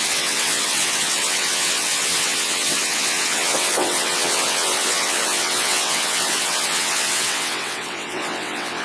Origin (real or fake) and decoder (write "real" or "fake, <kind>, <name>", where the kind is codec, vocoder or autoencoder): fake, vocoder, WaveNeXt